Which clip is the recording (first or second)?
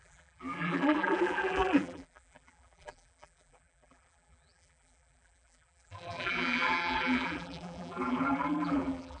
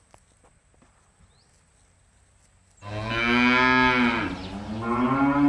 second